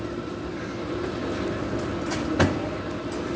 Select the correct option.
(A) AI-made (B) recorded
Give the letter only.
B